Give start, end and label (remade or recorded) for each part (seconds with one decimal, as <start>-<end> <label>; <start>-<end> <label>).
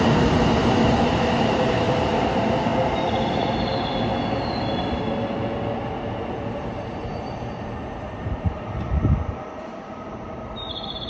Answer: 0.0-2.7 remade; 2.7-6.3 recorded; 6.3-11.1 remade